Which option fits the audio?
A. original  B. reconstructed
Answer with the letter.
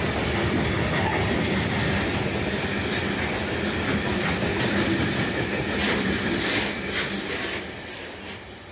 A